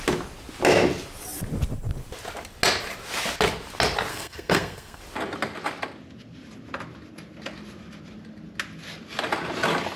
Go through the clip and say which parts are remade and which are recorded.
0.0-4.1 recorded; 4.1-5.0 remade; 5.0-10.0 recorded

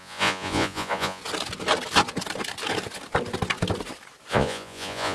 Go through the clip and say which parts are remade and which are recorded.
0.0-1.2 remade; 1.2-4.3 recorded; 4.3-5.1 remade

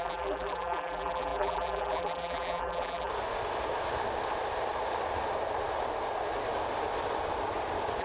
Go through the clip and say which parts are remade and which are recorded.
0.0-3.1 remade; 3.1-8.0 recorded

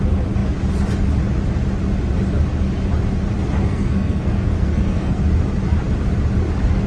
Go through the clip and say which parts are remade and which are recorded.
0.0-3.6 recorded; 3.6-5.2 remade; 5.2-6.9 recorded

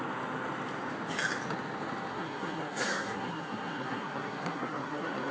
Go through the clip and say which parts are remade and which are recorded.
0.0-2.1 recorded; 2.1-5.3 remade

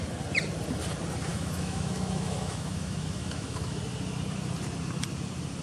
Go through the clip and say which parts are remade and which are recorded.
0.0-1.3 recorded; 1.3-3.8 remade; 3.8-5.6 recorded